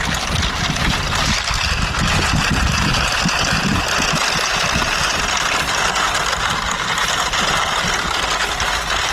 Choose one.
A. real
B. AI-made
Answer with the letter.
A